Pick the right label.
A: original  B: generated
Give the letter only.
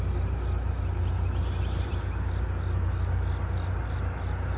A